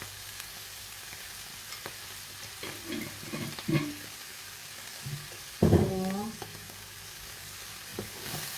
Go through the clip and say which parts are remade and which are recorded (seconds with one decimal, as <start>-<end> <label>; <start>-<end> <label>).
0.0-1.5 remade; 1.5-3.9 recorded; 3.9-8.6 remade